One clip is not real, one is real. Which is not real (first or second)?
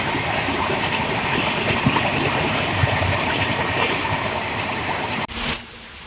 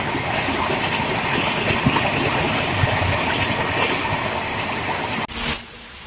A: first